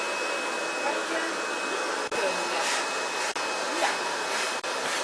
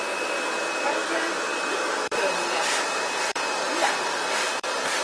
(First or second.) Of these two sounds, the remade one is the second